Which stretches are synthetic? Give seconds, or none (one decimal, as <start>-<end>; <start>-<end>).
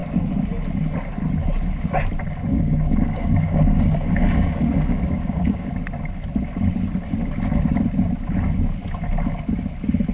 2.5-5.7